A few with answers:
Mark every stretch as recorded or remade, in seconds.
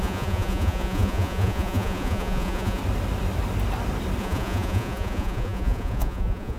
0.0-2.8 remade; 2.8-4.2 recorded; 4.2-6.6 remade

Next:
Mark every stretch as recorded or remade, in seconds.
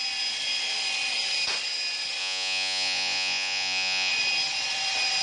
0.0-2.2 recorded; 2.2-4.1 remade; 4.1-5.2 recorded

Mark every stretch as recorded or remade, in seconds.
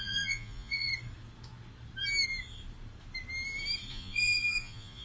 0.0-0.9 remade; 0.9-3.9 recorded; 3.9-5.0 remade